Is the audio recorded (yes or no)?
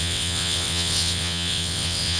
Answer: no